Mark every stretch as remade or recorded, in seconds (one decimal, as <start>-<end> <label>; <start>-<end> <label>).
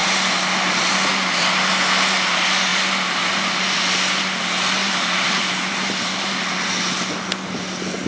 0.0-4.8 recorded; 4.8-6.4 remade; 6.4-8.1 recorded